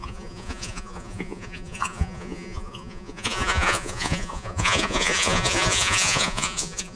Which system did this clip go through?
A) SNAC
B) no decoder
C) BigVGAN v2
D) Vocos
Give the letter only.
D